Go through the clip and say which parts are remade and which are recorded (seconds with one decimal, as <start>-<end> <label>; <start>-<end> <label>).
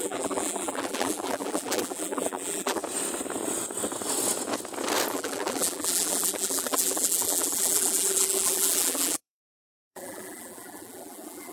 0.0-2.8 remade; 2.8-5.1 recorded; 5.1-11.5 remade